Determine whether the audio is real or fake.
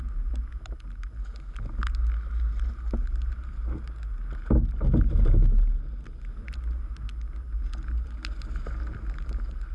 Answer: real